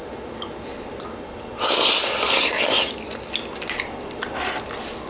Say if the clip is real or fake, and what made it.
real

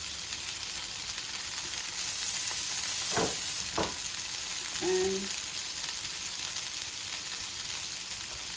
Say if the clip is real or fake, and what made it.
real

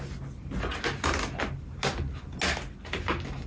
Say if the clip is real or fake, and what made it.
real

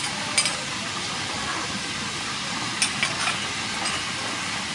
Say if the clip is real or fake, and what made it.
real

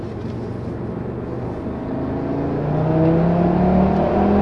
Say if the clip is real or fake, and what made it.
real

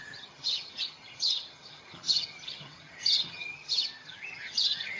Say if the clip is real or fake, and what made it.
fake, vocoder, HiFi-GAN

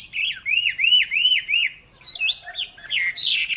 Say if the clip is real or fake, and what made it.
real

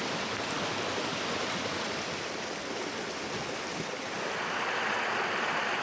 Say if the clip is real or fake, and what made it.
real